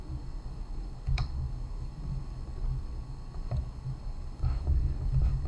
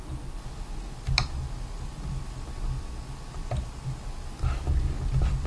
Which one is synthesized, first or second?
first